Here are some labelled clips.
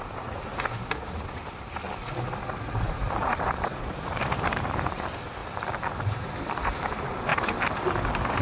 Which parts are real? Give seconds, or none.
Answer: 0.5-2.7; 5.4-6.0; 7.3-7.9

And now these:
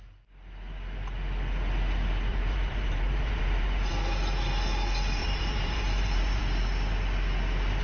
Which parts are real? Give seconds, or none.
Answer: 0.0-2.3; 3.9-5.2; 6.4-7.8

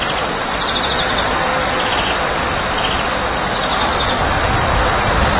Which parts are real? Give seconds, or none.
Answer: 0.0-5.4

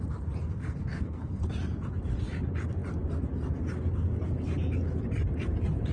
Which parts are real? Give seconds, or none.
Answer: 0.0-0.4; 1.4-5.9